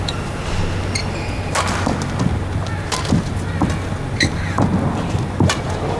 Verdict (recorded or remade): recorded